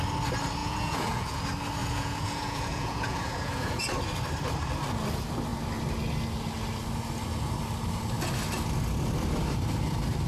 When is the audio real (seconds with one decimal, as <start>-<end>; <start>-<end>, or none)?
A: 0.0-0.6; 1.4-1.8; 3.8-10.3